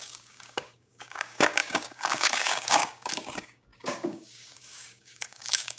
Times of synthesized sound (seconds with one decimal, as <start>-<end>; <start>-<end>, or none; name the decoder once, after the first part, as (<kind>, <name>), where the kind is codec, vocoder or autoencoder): 0.0-5.8 (codec, DAC)